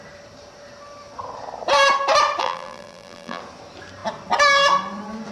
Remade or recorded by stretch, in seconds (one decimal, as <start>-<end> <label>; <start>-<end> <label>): 0.0-2.4 recorded; 2.4-3.4 remade; 3.4-5.3 recorded